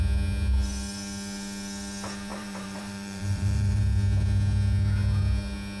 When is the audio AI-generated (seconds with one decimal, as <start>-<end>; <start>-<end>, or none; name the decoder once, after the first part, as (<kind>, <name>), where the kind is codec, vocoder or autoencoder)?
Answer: 2.3-3.8 (vocoder, BigVGAN v2)